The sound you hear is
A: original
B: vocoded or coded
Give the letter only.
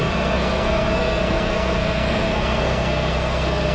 B